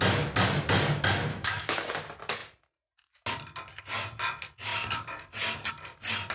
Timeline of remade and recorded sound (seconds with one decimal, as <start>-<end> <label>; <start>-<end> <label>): 0.0-1.3 recorded; 1.3-1.9 remade; 1.9-6.3 recorded